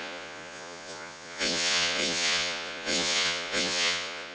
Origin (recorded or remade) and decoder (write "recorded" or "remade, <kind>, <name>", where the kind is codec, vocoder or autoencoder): remade, vocoder, Vocos